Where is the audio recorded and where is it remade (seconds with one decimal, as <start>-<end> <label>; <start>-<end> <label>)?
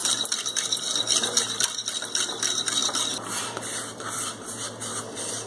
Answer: 0.0-5.5 recorded